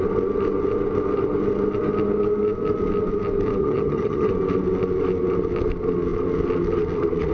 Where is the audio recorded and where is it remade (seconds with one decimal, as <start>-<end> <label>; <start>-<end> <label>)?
0.0-3.6 recorded; 3.6-4.3 remade; 4.3-7.3 recorded